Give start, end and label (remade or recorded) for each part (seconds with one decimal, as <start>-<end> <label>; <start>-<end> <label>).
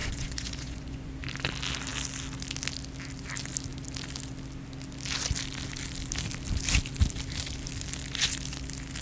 0.0-1.1 remade; 1.1-9.0 recorded